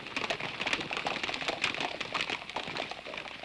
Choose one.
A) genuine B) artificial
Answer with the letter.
A